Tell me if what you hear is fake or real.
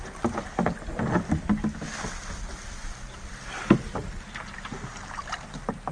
real